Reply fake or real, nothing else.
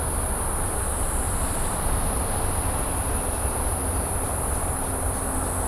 real